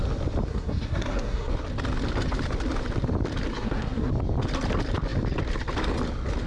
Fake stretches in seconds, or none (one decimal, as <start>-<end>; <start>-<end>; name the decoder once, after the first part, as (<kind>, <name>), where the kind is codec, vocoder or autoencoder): 0.5-1.5 (codec, SNAC); 3.5-4.1